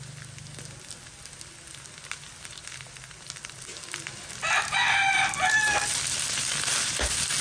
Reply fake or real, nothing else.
real